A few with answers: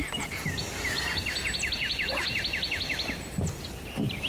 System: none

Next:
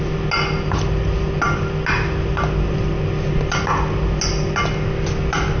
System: none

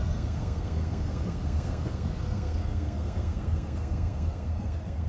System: codec, SNAC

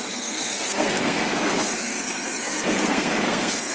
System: codec, SNAC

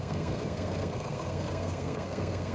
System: codec, SNAC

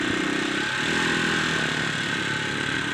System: none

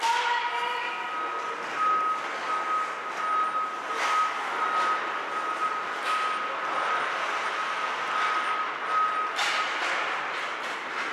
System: none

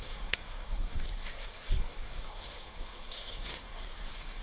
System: codec, SNAC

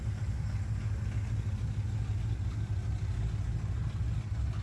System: none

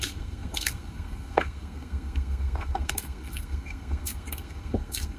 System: codec, SNAC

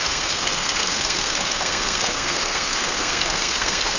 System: codec, SNAC